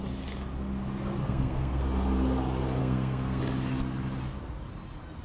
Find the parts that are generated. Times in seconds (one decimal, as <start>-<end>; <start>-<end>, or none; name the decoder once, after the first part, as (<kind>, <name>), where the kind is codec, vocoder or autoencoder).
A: 1.2-1.8 (codec, SNAC); 2.8-3.4